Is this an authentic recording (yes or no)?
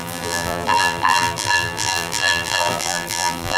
no